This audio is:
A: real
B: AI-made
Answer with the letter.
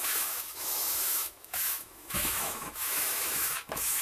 B